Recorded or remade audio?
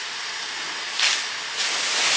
recorded